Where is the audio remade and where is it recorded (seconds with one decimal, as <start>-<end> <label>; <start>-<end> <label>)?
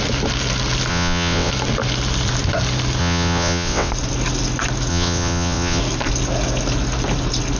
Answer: 0.0-0.9 recorded; 0.9-1.5 remade; 1.5-3.0 recorded; 3.0-3.9 remade; 3.9-4.9 recorded; 4.9-5.8 remade; 5.8-7.6 recorded